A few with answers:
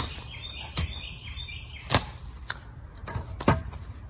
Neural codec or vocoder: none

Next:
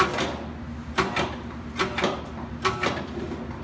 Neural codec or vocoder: none